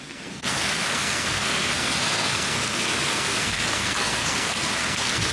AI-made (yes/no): yes